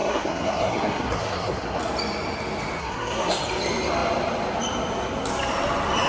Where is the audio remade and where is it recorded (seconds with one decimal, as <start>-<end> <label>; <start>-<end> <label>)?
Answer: 0.0-1.8 remade; 1.8-2.8 recorded; 2.8-3.4 remade; 3.4-6.1 recorded